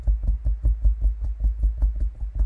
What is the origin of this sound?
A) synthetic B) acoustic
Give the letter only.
B